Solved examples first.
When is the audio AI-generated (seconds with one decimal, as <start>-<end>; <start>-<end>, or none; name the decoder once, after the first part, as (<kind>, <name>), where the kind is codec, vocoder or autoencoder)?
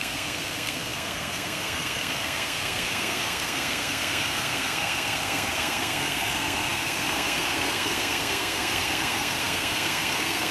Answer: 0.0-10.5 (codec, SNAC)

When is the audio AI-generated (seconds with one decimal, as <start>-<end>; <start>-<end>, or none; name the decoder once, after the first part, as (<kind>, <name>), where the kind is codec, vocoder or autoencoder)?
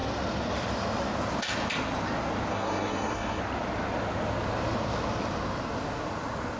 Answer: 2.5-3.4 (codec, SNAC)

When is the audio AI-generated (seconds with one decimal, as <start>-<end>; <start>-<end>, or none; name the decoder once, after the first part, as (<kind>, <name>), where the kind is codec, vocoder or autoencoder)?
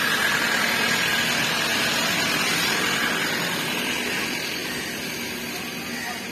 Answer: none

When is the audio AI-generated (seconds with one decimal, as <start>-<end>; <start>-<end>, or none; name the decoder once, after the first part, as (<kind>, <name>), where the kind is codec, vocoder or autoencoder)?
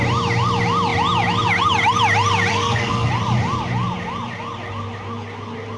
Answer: 2.5-3.1 (codec, SNAC)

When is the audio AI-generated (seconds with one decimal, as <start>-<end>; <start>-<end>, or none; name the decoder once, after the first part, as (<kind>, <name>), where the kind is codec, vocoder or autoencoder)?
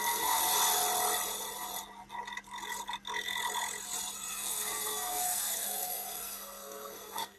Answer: 0.0-0.4 (codec, SNAC); 4.3-7.4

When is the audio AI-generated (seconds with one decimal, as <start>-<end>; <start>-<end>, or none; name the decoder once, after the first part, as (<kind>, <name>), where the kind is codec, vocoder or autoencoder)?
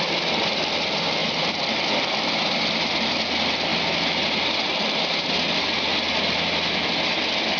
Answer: none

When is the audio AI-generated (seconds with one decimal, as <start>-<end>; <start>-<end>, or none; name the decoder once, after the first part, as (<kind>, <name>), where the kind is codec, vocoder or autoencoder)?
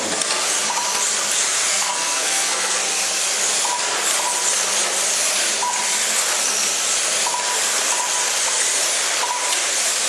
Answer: 1.7-2.8 (codec, SNAC)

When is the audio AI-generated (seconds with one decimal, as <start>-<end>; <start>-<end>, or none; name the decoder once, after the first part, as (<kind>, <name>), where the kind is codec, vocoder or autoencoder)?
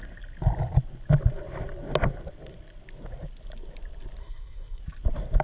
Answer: 4.2-4.8 (codec, SNAC)